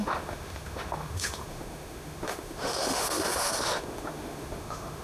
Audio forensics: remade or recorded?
remade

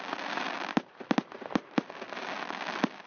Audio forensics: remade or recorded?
recorded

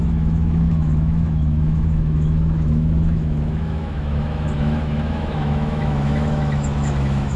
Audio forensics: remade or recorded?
remade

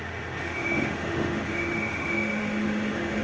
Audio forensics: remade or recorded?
remade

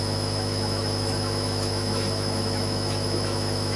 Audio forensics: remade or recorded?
remade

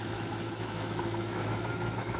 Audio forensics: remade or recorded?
remade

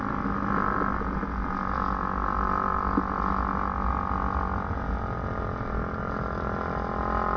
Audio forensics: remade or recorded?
recorded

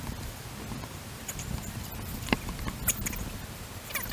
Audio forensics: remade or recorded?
recorded